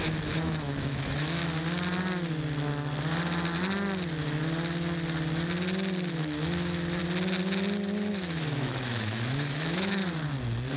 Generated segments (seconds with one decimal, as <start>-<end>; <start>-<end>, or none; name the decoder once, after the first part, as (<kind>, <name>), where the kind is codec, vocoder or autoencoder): 0.0-1.4 (autoencoder, DAC-VAE); 6.1-7.0; 8.1-10.0